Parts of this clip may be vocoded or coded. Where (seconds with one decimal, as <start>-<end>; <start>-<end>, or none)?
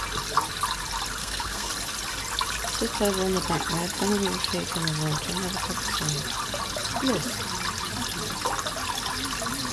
1.2-1.7